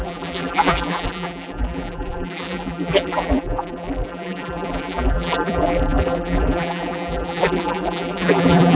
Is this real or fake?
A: fake